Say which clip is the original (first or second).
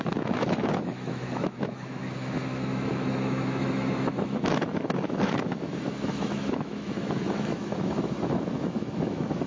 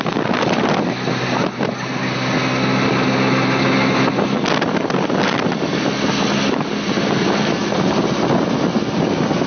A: second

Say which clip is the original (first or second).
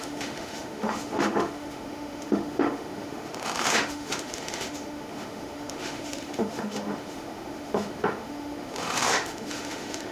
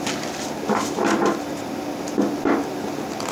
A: second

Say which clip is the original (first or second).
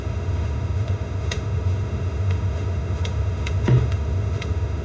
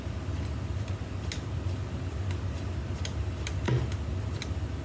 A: second